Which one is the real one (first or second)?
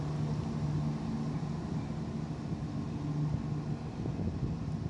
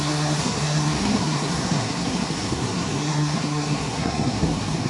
first